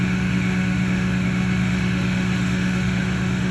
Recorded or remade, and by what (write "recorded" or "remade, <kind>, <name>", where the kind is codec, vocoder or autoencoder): remade, autoencoder, DAC-VAE